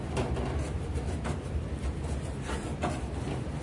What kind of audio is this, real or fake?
real